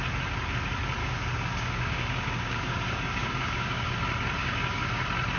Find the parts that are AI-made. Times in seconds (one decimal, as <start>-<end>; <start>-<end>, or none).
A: 1.0-3.9; 4.4-5.0